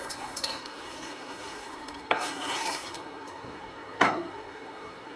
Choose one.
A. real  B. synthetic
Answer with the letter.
B